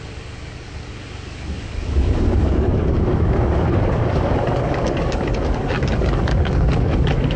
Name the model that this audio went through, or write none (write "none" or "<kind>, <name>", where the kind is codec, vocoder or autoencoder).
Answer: codec, DAC